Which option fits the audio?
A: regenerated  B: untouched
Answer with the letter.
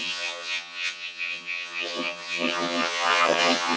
A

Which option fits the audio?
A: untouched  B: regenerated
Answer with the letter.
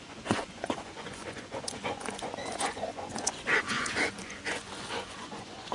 B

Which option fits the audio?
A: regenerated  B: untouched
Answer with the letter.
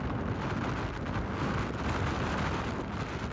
B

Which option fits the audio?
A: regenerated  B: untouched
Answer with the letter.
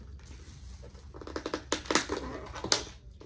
B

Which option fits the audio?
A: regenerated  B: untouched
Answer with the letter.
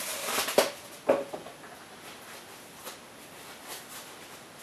B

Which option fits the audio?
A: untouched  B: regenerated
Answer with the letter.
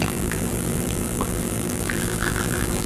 B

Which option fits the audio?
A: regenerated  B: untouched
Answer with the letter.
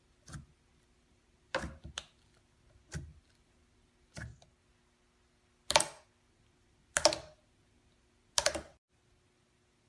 B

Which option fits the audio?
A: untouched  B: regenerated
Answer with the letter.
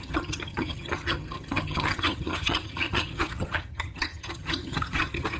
B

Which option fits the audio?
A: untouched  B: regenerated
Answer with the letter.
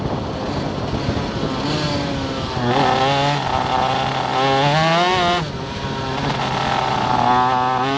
A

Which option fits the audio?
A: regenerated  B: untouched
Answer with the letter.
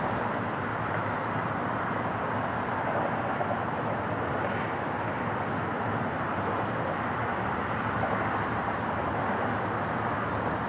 B